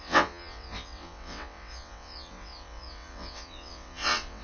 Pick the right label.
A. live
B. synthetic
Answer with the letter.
B